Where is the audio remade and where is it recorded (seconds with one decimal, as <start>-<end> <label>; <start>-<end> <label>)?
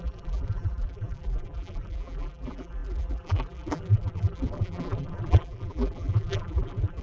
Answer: 0.0-7.0 remade